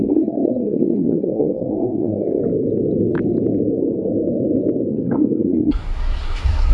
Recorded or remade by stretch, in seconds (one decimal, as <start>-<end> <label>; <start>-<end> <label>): 0.0-2.4 remade; 2.4-4.9 recorded; 4.9-6.7 remade